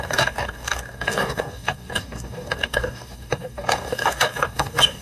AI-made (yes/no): yes